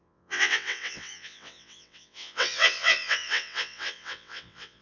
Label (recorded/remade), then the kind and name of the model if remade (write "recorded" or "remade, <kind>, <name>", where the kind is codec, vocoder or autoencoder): remade, vocoder, WaveNeXt